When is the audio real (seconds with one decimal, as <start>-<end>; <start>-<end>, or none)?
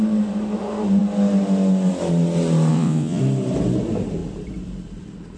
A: 0.0-2.7; 3.2-5.4